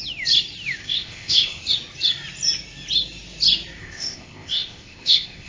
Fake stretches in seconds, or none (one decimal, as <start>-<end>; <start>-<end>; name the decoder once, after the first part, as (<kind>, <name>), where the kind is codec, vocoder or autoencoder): 0.8-1.6 (codec, ZipCodec); 3.8-5.5